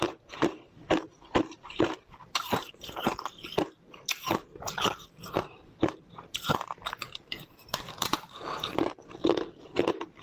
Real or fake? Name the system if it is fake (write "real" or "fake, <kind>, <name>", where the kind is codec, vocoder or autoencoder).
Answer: fake, vocoder, BigVGAN v2